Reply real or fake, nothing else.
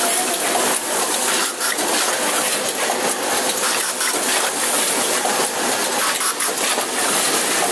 real